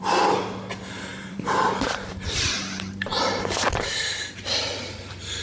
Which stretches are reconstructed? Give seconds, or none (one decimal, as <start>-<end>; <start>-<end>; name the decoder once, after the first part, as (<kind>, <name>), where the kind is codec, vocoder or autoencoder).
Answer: 1.1-4.3 (vocoder, BigVGAN v2)